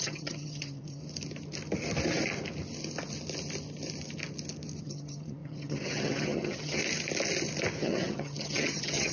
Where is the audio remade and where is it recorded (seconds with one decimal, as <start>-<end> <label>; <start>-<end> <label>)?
0.0-1.0 remade; 1.0-4.8 recorded; 4.8-6.8 remade; 6.8-7.8 recorded; 7.8-9.1 remade